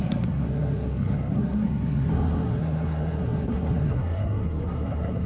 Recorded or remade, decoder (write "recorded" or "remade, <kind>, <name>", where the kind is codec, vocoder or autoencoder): remade, codec, SNAC